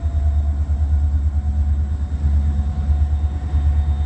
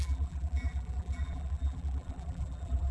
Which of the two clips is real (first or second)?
first